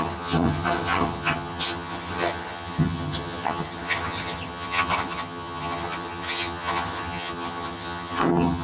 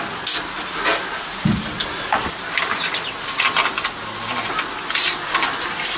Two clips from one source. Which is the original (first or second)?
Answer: second